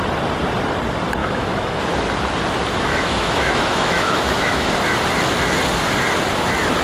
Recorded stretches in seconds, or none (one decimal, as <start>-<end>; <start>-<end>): 0.0-1.2; 1.8-2.9; 4.7-6.8